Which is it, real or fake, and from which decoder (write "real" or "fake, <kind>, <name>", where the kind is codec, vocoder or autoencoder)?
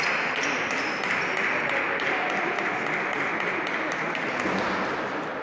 real